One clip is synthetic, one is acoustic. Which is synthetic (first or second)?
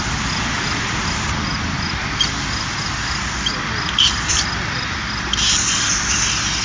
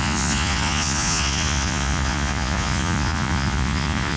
second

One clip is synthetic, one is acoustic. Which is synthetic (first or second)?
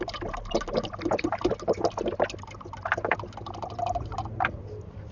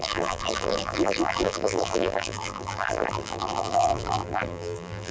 second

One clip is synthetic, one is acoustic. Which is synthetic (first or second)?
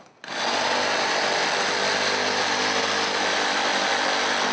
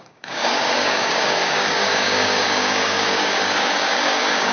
second